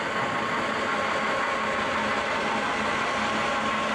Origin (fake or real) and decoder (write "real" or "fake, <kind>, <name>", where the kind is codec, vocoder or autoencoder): real